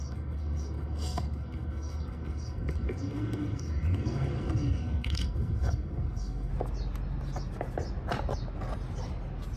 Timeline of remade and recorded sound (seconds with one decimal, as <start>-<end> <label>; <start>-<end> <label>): 0.0-6.5 remade; 6.5-9.6 recorded